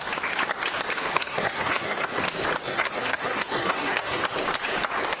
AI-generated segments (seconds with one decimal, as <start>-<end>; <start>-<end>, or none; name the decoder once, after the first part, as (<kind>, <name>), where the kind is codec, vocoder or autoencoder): 1.1-2.2 (codec, SNAC); 2.6-4.2